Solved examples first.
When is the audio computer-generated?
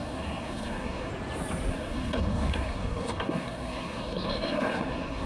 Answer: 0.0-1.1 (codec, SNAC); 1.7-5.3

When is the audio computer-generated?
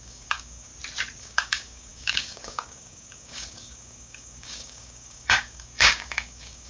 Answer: 0.0-0.7 (codec, DAC); 1.2-6.7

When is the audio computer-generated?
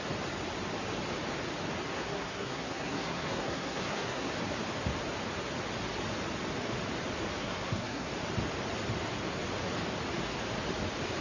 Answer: 1.9-4.3 (codec, SNAC); 7.4-8.1